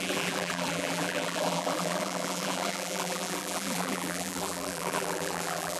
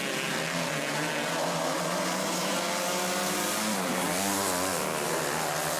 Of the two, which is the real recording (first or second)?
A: second